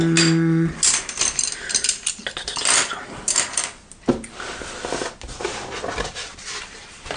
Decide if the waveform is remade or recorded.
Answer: recorded